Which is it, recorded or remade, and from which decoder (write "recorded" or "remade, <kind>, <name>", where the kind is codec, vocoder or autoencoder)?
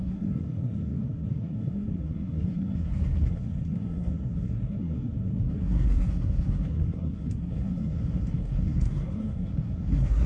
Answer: remade, codec, SNAC